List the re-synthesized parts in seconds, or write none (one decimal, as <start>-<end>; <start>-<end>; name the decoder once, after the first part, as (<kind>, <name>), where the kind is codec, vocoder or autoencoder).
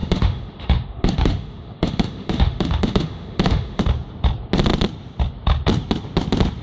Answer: 0.0-3.8 (autoencoder, DAC-VAE)